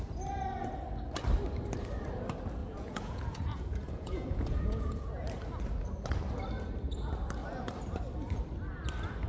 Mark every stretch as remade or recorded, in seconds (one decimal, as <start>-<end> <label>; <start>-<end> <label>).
0.0-2.6 recorded; 2.6-5.1 remade; 5.1-9.3 recorded